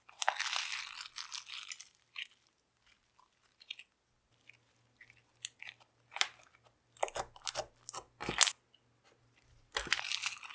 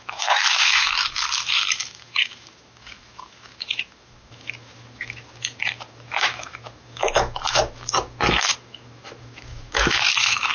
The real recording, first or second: first